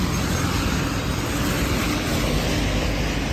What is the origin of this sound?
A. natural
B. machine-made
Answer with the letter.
A